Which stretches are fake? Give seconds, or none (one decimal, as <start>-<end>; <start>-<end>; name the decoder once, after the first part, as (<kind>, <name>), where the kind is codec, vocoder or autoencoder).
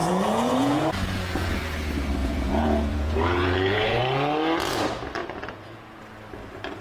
0.0-1.6 (vocoder, Vocos); 2.2-4.0; 5.2-6.0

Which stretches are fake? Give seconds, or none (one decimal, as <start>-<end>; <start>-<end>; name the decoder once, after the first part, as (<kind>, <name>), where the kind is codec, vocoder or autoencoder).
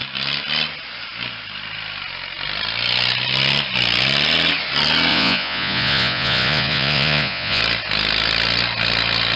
5.1-7.6 (vocoder, Vocos)